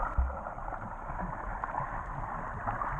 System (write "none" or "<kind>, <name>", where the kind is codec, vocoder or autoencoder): none